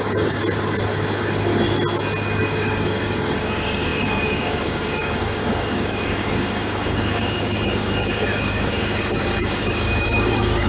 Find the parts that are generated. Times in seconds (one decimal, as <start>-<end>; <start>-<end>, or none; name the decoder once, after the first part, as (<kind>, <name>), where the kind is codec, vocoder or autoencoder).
0.0-0.4 (codec, DAC); 2.4-10.7